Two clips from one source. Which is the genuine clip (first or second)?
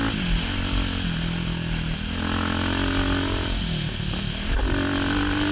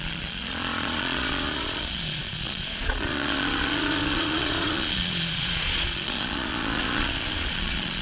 first